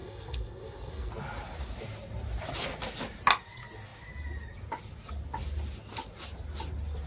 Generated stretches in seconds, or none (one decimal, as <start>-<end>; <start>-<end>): 0.0-1.1